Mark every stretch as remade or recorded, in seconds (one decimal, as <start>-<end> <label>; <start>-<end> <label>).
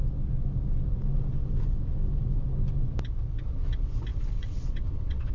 0.0-4.1 recorded; 4.1-5.3 remade